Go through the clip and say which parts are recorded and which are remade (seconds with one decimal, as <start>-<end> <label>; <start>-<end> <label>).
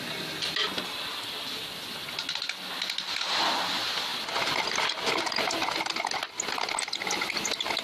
0.0-4.1 recorded; 4.1-5.5 remade; 5.5-7.8 recorded